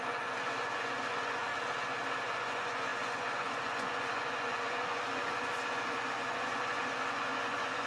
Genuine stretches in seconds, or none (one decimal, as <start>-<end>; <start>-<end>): 1.5-2.2

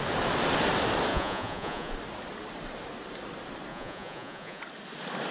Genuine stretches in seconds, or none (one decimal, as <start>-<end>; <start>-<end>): 0.0-1.1; 1.9-3.7; 4.6-5.3

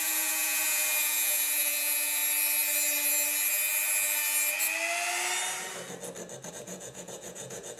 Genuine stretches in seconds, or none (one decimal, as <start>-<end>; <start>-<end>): 2.2-6.5

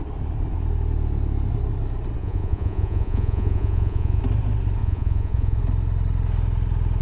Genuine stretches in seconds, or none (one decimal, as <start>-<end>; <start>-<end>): 0.0-2.2; 4.2-4.8; 5.6-7.0